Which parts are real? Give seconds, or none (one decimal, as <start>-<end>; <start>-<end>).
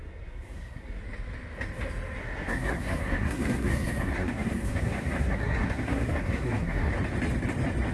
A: 1.0-2.2; 6.9-7.9